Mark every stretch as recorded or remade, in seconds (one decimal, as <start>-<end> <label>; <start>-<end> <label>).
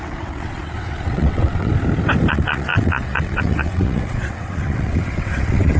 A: 0.0-1.7 remade; 1.7-2.3 recorded; 2.3-5.8 remade